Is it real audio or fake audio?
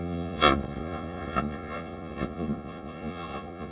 fake